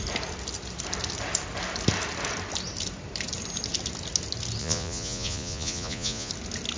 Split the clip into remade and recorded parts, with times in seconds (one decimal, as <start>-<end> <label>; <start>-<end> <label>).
0.0-4.6 recorded; 4.6-6.3 remade; 6.3-6.8 recorded